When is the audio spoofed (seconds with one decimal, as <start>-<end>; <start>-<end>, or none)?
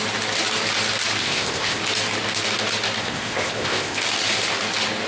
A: 1.2-1.8; 3.0-4.0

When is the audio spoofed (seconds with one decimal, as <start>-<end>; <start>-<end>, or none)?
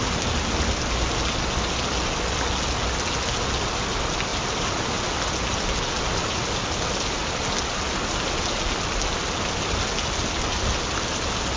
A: none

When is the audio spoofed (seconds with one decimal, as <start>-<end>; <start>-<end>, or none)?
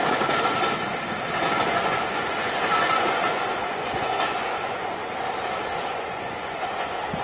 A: 1.6-5.0; 5.9-7.2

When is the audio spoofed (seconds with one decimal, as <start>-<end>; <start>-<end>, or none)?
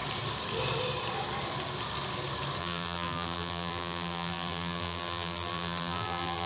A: 2.6-6.5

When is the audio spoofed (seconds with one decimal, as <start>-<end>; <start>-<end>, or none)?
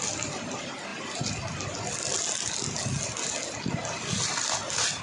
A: none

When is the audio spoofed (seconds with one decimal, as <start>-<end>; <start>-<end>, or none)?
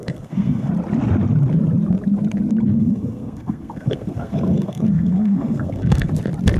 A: 0.0-0.7; 2.7-6.1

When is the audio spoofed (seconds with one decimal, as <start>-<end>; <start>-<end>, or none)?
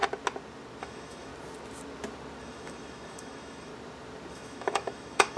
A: 0.8-1.3; 2.4-3.7; 4.3-5.4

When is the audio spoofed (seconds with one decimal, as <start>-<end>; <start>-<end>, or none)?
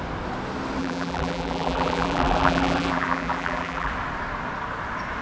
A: 0.8-3.9